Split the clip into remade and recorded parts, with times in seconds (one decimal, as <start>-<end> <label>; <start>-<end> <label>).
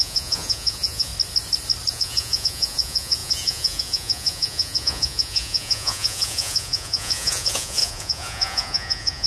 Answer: 0.0-1.1 remade; 1.1-1.9 recorded; 1.9-9.3 remade